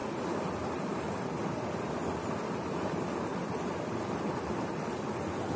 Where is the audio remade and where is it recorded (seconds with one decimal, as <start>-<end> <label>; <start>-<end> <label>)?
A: 0.0-3.3 recorded; 3.3-4.4 remade; 4.4-5.6 recorded